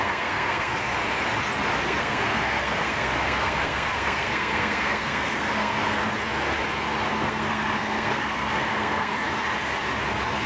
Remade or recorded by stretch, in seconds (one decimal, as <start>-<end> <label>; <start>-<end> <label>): 0.0-0.7 remade; 0.7-1.8 recorded; 1.8-6.0 remade; 6.0-7.1 recorded; 7.1-9.1 remade; 9.1-10.5 recorded